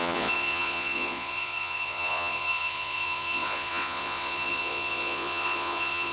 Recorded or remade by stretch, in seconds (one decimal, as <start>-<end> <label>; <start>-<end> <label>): 0.0-6.1 remade